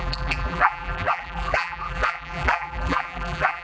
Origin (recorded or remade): remade